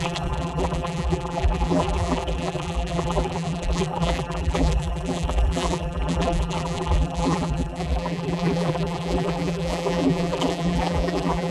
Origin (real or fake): fake